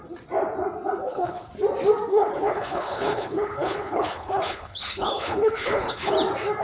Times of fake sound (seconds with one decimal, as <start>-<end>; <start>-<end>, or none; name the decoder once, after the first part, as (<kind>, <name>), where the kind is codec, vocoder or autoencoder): 1.0-1.5 (codec, HILCodec); 2.1-6.1